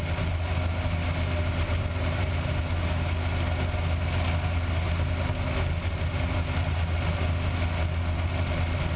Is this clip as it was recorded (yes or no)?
yes